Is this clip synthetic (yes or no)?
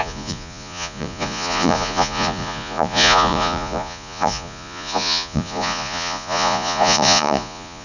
yes